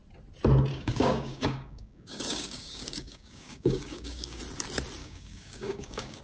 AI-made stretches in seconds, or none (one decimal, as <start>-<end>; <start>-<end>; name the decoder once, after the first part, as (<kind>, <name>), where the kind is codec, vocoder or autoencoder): 0.7-4.4 (codec, DAC); 5.0-6.2